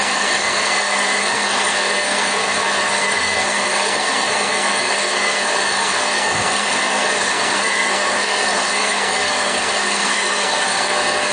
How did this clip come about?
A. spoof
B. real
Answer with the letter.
A